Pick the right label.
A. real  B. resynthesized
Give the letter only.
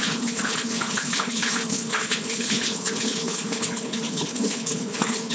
B